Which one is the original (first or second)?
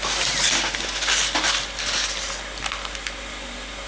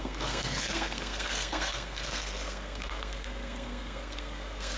first